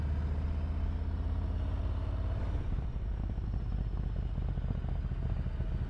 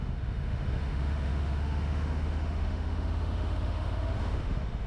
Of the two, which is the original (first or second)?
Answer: first